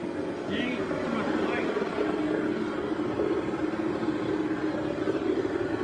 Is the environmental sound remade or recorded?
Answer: recorded